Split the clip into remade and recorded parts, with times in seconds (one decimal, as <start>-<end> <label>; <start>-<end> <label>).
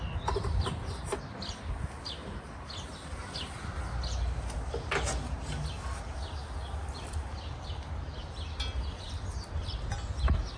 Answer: 0.0-10.6 recorded